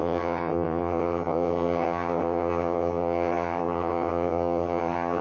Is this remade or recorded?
remade